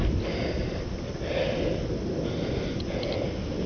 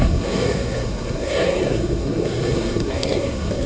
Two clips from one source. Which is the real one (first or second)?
first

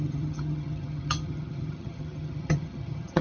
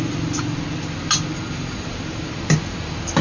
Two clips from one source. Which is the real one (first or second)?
second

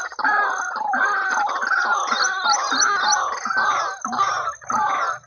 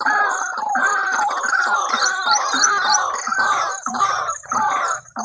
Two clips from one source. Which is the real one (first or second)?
first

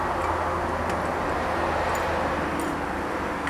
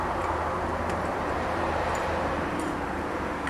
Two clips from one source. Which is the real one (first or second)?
first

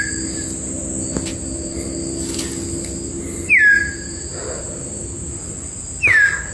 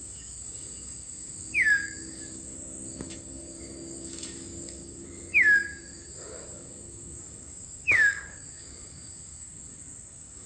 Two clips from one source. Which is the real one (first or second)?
first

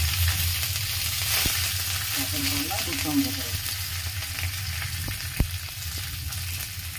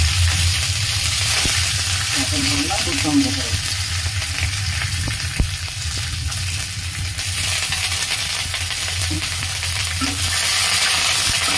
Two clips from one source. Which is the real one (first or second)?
first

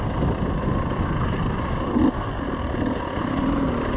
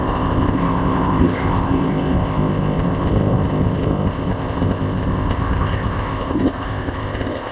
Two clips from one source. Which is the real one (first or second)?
first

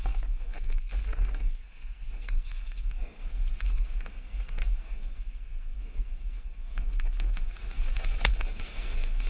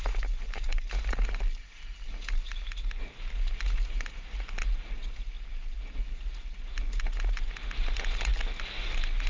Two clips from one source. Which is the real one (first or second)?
second